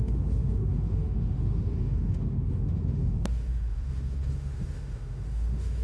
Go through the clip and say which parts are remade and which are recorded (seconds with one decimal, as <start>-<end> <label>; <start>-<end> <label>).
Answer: 0.0-5.8 remade